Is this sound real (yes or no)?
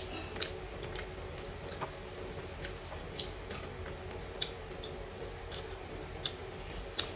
yes